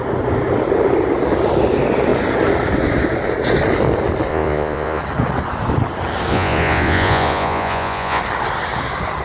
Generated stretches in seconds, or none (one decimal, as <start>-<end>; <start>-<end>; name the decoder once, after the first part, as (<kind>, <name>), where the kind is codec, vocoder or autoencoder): 4.3-5.0 (vocoder, Vocos); 6.3-8.2